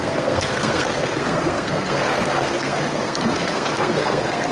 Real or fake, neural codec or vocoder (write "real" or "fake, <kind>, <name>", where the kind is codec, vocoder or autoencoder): fake, codec, SNAC